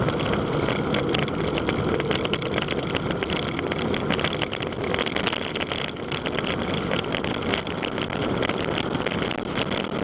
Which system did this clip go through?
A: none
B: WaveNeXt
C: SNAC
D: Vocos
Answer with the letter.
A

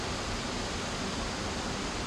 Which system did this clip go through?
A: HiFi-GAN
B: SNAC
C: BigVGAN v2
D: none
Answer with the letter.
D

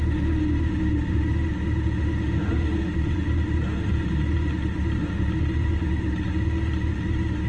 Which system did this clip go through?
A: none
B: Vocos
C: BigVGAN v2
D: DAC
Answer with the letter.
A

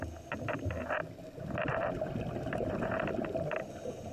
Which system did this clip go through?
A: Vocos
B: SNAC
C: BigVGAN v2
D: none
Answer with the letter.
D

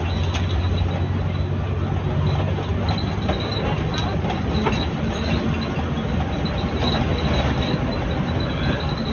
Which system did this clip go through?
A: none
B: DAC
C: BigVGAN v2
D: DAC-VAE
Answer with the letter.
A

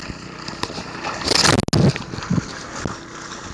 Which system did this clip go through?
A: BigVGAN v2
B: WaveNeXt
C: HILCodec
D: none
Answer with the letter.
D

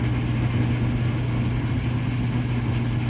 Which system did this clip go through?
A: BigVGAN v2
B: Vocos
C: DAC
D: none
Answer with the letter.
D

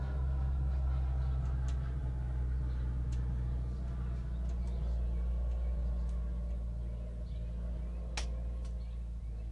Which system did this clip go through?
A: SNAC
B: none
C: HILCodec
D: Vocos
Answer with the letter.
B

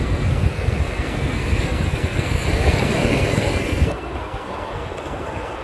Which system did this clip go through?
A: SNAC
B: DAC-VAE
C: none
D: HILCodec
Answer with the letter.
A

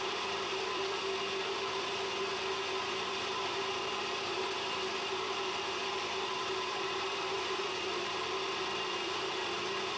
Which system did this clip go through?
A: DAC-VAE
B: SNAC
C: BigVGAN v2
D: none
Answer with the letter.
C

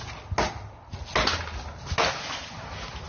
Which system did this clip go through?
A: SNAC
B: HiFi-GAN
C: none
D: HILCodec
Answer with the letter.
C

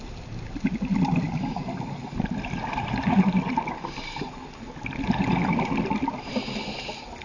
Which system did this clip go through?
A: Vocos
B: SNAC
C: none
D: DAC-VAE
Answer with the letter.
C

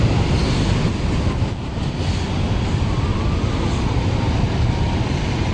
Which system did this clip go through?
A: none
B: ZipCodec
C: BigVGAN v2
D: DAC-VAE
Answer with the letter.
A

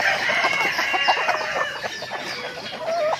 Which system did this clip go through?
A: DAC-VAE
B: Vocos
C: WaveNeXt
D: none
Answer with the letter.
D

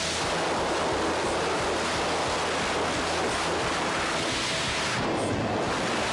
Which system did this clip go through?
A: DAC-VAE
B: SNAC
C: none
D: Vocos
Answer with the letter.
C